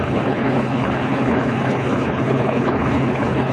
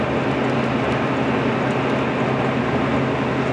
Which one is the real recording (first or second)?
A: second